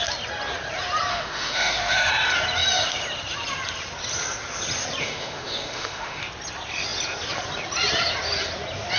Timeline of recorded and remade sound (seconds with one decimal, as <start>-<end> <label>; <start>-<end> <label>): 0.0-1.1 recorded; 1.1-2.1 remade; 2.1-5.0 recorded; 5.0-6.2 remade; 6.2-9.0 recorded